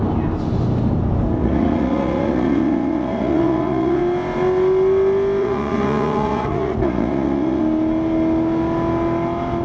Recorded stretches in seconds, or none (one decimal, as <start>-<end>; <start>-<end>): 0.0-1.4; 4.0-5.4; 7.6-9.6